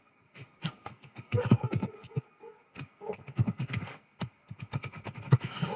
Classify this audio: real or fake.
fake